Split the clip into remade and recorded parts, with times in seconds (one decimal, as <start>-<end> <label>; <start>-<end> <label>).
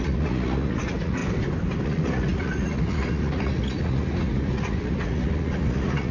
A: 0.0-1.2 remade; 1.2-1.8 recorded; 1.8-6.1 remade